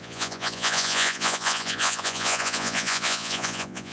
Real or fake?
fake